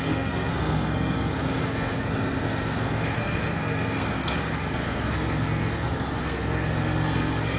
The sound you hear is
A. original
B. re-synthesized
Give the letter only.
B